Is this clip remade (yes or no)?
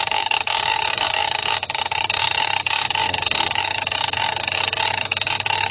yes